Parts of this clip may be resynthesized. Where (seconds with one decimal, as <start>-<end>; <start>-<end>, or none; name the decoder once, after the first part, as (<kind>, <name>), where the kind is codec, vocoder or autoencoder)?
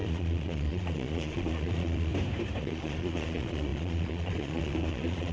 0.0-2.1 (vocoder, Vocos); 2.6-5.3